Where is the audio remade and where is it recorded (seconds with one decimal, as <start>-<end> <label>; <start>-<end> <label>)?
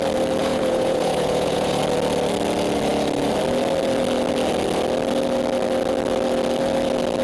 0.0-0.4 recorded; 0.4-1.8 remade; 1.8-7.2 recorded